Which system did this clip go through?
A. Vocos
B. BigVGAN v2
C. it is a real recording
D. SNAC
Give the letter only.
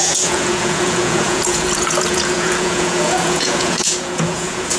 A